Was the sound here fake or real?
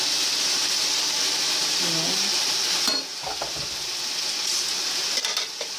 real